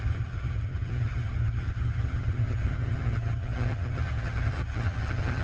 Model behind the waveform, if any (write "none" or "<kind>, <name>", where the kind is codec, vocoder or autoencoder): vocoder, HiFi-GAN